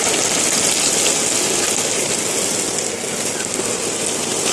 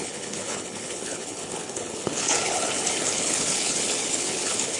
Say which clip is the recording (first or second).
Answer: first